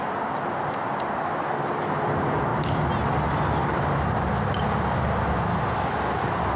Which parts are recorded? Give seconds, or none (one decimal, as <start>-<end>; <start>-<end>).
0.0-6.6